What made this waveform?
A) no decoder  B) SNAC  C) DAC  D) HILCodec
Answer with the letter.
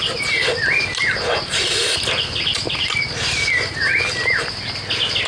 A